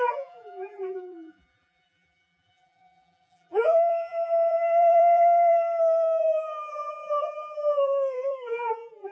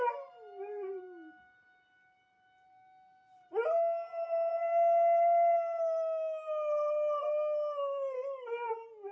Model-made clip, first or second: first